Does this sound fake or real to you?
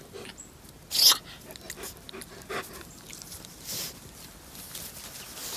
real